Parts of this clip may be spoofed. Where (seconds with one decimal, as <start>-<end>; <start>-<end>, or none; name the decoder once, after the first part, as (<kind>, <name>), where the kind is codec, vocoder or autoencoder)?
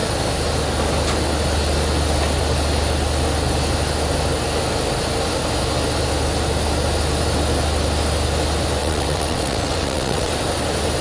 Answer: 8.8-10.3 (vocoder, WaveNeXt)